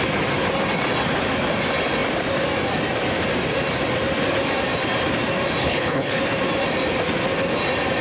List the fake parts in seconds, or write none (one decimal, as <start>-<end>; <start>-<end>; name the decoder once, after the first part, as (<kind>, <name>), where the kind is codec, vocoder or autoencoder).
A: 5.6-6.2 (codec, HILCodec)